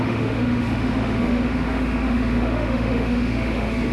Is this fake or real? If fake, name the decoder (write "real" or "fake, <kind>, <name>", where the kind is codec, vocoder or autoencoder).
fake, autoencoder, DAC-VAE